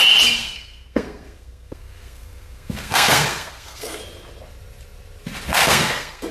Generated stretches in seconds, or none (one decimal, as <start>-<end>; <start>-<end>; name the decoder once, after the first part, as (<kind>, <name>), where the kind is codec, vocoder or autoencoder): 0.4-4.0 (codec, SNAC); 5.5-6.3